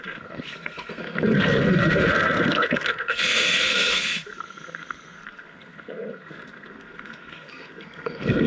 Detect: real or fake fake